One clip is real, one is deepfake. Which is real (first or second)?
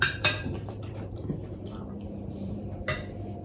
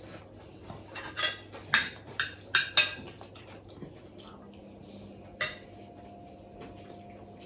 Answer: second